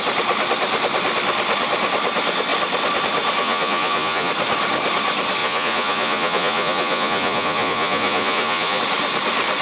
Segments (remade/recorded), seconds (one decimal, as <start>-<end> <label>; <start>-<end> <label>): 0.0-3.4 recorded; 3.4-4.3 remade; 4.3-5.4 recorded; 5.4-8.8 remade; 8.8-9.6 recorded